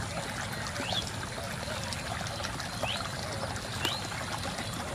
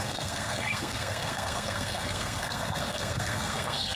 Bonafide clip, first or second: first